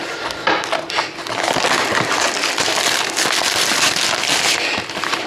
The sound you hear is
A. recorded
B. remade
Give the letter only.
A